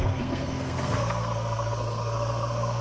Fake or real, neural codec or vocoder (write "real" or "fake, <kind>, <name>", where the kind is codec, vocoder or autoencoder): fake, codec, SNAC